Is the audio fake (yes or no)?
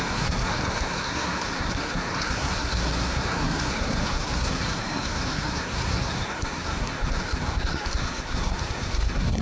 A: yes